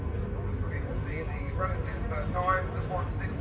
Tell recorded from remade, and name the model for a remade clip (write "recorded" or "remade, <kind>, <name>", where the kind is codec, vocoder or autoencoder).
recorded